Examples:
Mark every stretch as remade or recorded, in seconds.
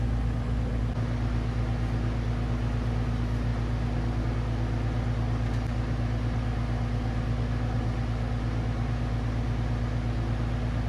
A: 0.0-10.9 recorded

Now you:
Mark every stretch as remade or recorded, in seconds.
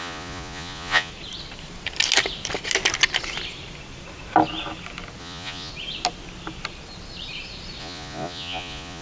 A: 0.0-1.1 remade; 1.1-5.2 recorded; 5.2-5.7 remade; 5.7-7.8 recorded; 7.8-9.0 remade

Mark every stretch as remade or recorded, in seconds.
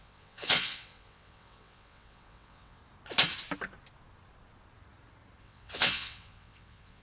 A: 0.0-2.8 remade; 2.8-5.4 recorded; 5.4-7.0 remade